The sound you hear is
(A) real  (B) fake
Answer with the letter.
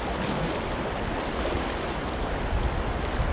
A